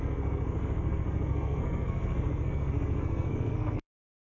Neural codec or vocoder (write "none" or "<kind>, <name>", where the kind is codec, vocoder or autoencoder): codec, SNAC